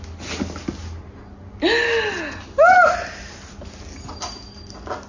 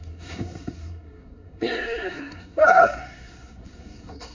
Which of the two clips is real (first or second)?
first